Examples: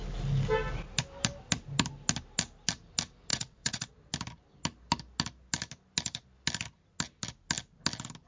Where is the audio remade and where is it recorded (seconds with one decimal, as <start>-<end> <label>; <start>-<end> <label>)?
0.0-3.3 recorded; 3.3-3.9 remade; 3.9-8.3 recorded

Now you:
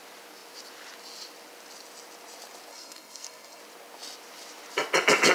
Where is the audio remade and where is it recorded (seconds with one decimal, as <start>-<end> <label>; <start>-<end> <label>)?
0.0-2.7 recorded; 2.7-3.6 remade; 3.6-5.3 recorded

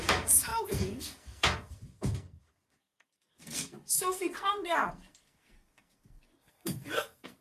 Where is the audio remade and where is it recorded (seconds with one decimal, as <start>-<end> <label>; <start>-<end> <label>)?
0.0-7.4 remade

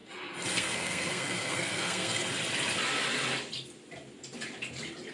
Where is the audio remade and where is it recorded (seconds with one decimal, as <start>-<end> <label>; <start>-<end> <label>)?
0.0-0.5 recorded; 0.5-2.2 remade; 2.2-5.1 recorded

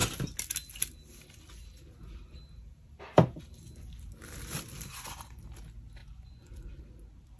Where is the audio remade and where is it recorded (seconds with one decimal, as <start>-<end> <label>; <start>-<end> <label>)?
0.0-4.9 recorded; 4.9-5.4 remade; 5.4-6.0 recorded; 6.0-6.8 remade; 6.8-7.4 recorded